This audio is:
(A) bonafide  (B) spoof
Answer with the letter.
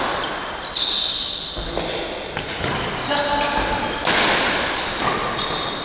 A